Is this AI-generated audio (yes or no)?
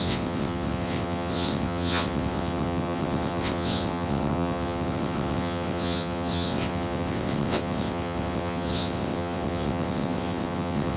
yes